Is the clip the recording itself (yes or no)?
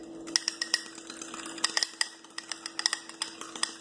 yes